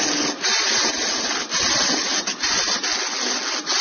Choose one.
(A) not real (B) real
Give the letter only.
B